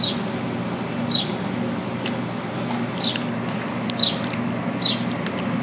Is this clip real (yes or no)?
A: yes